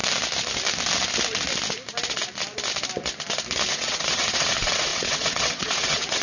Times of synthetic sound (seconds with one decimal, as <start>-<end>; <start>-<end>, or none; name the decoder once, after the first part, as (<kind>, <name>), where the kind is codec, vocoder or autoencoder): 3.7-6.2 (vocoder, WaveNeXt)